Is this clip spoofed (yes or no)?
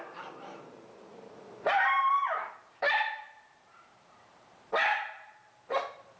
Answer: yes